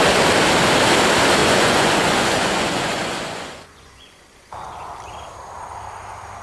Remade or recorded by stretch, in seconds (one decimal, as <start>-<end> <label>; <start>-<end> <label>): 0.0-1.4 recorded; 1.4-4.9 remade; 4.9-6.4 recorded